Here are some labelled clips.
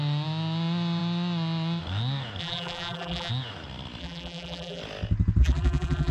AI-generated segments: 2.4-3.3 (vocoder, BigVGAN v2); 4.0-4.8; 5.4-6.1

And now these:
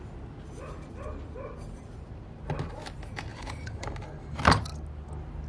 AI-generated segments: 3.3-3.8 (vocoder, BigVGAN v2)

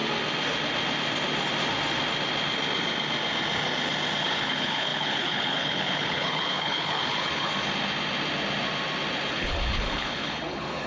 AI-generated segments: 4.2-7.5 (codec, HILCodec); 9.3-10.9